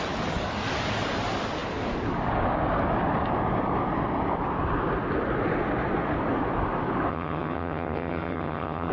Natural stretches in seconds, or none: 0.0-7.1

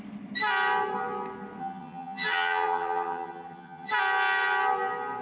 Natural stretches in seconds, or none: 0.0-1.6; 3.9-5.2

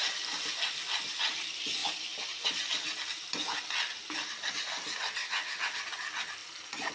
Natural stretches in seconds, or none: 0.0-5.2; 5.8-6.9

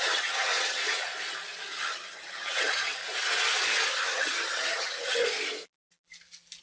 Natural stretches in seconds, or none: 0.8-1.8; 3.0-3.9; 5.3-6.6

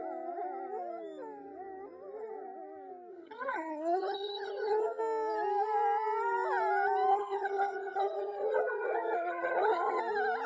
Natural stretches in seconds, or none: 0.0-3.1; 5.0-7.1; 10.0-10.5